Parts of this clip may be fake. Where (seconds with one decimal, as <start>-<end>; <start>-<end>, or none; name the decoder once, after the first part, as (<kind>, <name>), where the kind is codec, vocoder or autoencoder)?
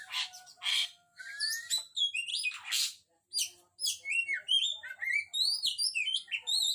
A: 0.7-1.2 (codec, SNAC)